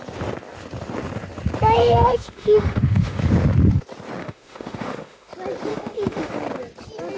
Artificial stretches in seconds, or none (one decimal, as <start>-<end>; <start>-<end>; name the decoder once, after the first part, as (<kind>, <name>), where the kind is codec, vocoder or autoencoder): 1.8-3.2 (autoencoder, DAC-VAE); 4.2-5.3; 5.7-6.3